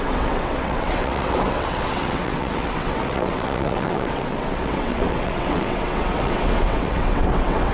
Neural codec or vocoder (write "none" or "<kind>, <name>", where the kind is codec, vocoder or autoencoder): vocoder, WaveNeXt